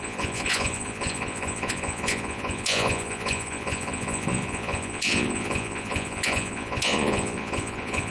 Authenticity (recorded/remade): remade